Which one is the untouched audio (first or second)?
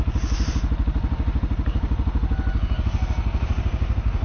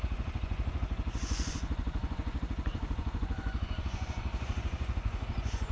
first